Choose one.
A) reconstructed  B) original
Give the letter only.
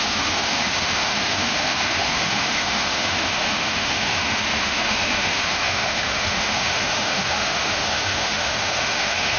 A